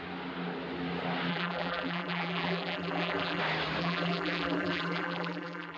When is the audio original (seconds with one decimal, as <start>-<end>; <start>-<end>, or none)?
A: 0.0-1.3; 3.4-3.8